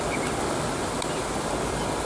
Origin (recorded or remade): recorded